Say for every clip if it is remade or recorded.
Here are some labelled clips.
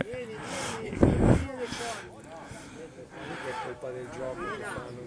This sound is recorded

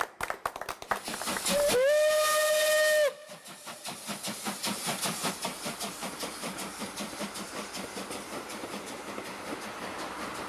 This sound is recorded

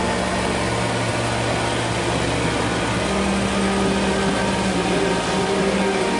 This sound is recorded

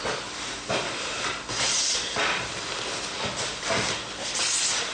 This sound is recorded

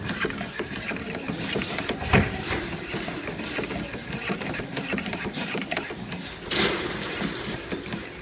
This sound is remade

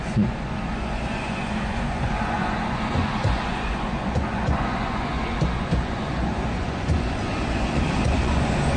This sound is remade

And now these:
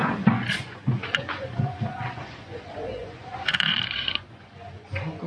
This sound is remade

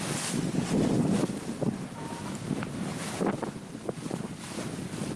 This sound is recorded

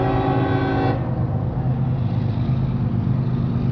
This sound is recorded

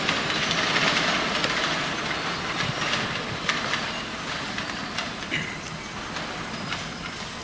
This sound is recorded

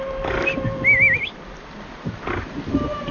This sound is recorded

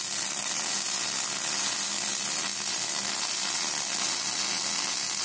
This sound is recorded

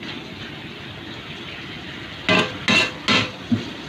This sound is recorded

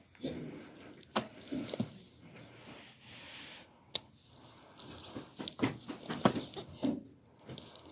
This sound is recorded